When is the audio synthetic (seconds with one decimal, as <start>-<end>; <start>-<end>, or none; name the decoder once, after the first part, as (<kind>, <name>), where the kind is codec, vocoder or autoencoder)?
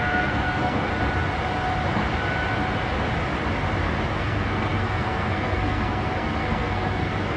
0.0-0.9 (codec, SNAC); 4.1-7.4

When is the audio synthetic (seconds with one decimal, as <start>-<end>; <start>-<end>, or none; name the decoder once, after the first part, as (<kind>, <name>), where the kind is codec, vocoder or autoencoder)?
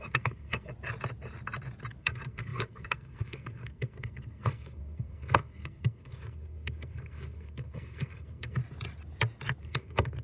0.0-0.7 (codec, SNAC); 2.0-8.6; 9.6-10.2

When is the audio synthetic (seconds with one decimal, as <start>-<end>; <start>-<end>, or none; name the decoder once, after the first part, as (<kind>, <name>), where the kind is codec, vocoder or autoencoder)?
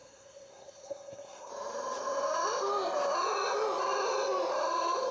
0.0-1.5 (codec, SNAC)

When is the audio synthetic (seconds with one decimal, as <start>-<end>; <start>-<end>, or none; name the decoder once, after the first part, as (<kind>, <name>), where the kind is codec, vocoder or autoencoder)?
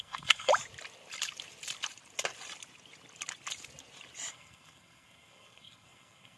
0.0-0.5 (codec, SNAC); 4.3-6.4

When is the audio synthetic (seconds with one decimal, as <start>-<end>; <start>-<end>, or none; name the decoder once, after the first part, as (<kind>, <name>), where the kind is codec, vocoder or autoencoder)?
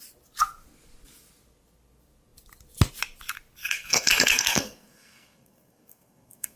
3.6-6.6 (codec, SNAC)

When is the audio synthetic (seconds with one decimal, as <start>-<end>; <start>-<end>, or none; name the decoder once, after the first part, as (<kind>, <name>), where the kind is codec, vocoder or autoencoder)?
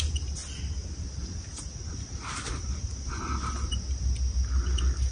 none